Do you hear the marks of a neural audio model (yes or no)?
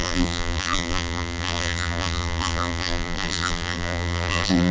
yes